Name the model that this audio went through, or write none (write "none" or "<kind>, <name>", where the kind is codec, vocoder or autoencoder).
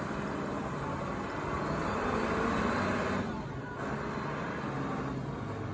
none